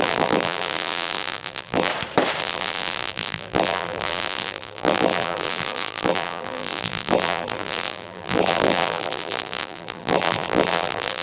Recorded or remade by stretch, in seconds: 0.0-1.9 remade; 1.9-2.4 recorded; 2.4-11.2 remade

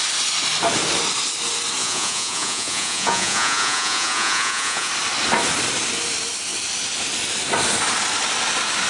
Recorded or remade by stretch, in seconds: 0.0-1.8 recorded; 1.8-4.9 remade; 4.9-8.9 recorded

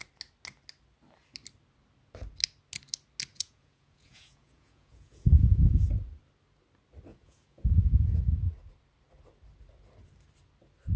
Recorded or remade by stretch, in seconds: 0.0-3.3 recorded; 3.3-5.9 remade; 5.9-7.1 recorded; 7.1-8.2 remade; 8.2-11.0 recorded

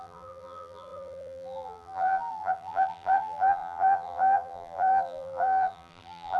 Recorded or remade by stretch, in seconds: 0.0-6.4 remade

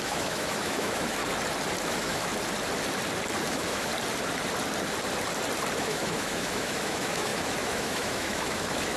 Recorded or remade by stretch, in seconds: 0.0-1.2 remade; 1.2-1.8 recorded; 1.8-2.3 remade; 2.3-3.5 recorded; 3.5-3.9 remade; 3.9-5.8 recorded; 5.8-9.0 remade

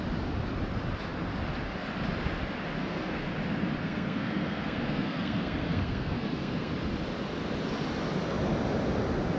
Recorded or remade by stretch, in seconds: 0.0-2.8 recorded; 2.8-3.3 remade; 3.3-3.8 recorded; 3.8-6.7 remade; 6.7-9.4 recorded

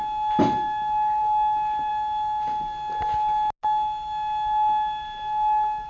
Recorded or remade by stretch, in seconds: 0.0-5.9 recorded

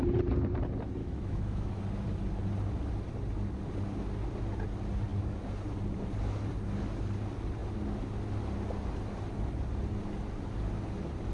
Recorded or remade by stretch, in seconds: 0.0-1.0 recorded; 1.0-1.8 remade; 1.8-11.3 recorded